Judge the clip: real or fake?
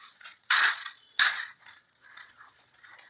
fake